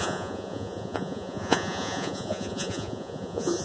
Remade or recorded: remade